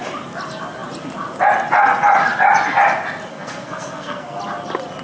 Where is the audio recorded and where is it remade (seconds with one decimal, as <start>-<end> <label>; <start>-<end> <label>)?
0.0-3.3 recorded; 3.3-4.4 remade; 4.4-5.0 recorded